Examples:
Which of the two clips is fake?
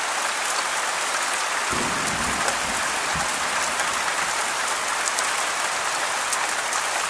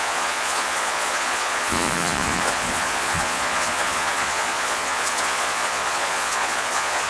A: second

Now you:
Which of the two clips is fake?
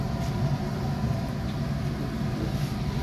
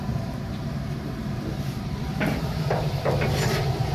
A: second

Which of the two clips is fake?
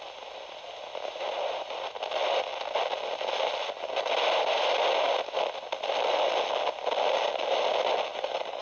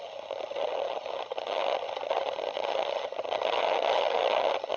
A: second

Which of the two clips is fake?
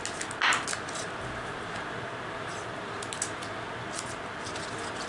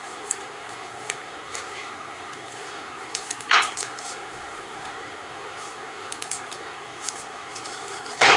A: second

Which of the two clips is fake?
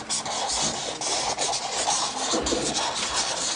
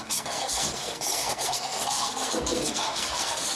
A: second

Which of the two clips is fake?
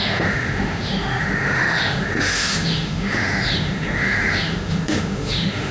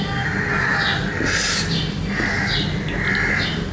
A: first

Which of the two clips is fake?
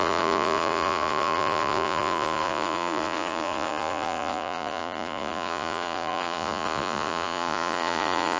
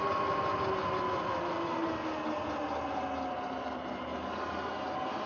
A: first